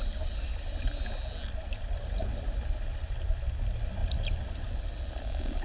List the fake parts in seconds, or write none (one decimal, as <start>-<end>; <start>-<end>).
none